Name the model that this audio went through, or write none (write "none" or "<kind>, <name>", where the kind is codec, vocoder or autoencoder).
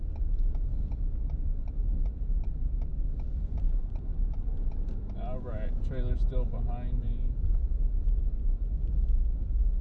none